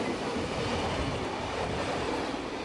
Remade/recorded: recorded